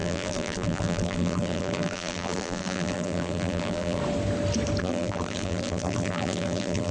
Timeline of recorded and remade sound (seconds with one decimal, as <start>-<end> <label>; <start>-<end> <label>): 0.0-4.0 remade; 4.0-4.8 recorded; 4.8-6.9 remade